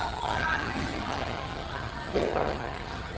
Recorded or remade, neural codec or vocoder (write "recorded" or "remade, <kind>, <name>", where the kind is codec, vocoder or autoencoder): remade, vocoder, HiFi-GAN